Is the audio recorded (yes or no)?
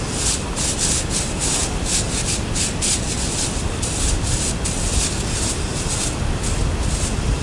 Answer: yes